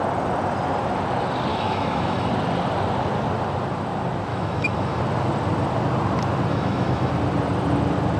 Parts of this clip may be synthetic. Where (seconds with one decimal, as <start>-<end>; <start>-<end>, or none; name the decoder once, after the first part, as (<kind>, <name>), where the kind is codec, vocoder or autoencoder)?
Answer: 1.5-2.3 (autoencoder, DAC-VAE); 4.3-5.0; 6.5-7.1